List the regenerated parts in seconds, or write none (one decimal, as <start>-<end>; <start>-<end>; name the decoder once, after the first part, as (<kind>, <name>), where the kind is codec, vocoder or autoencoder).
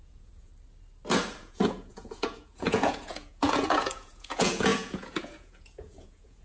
0.0-0.5 (vocoder, Vocos); 1.4-6.4